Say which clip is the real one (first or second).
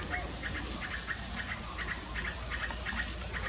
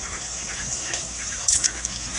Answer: first